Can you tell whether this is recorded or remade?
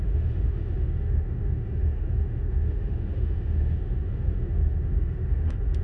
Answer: remade